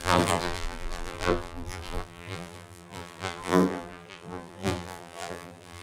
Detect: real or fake fake